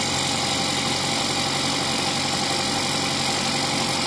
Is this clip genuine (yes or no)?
yes